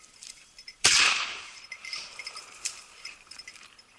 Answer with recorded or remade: remade